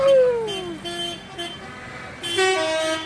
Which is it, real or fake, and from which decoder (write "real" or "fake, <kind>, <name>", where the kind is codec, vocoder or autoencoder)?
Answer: real